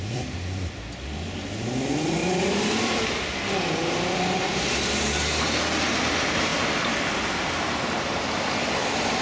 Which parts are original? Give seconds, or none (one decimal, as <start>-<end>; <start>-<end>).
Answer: 0.0-2.2; 5.6-9.2